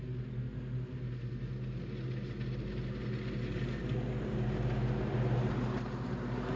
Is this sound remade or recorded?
recorded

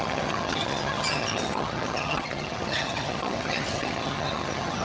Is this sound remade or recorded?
remade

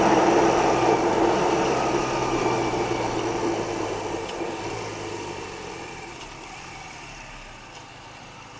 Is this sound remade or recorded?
recorded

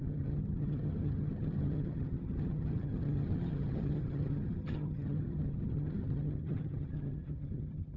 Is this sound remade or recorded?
remade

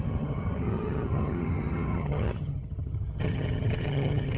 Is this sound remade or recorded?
remade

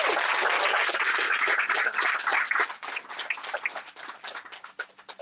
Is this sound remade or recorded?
recorded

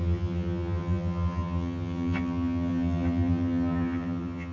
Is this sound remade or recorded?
remade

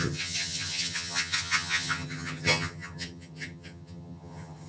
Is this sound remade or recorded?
remade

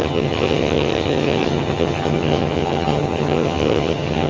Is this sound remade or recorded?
remade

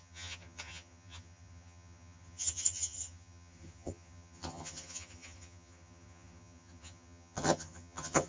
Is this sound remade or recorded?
remade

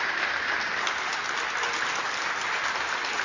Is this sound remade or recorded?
recorded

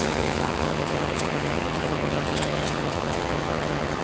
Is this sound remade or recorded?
remade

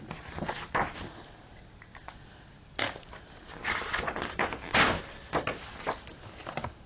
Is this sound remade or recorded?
recorded